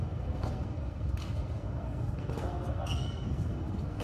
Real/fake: fake